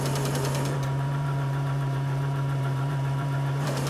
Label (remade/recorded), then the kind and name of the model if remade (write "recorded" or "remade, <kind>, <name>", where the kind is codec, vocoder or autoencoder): remade, vocoder, BigVGAN v2